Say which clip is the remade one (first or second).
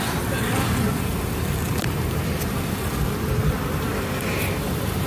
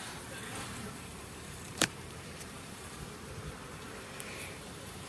second